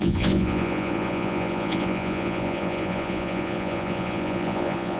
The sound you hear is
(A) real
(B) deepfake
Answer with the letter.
B